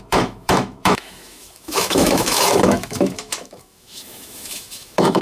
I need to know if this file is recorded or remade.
remade